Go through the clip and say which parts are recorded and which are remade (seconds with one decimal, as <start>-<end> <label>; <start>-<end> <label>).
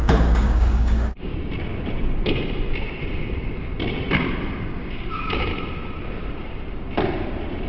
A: 0.0-1.3 remade; 1.3-4.6 recorded; 4.6-5.5 remade; 5.5-7.7 recorded